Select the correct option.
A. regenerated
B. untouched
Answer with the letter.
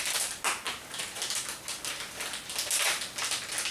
B